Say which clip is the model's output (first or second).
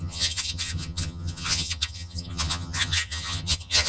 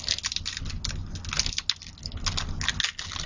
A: first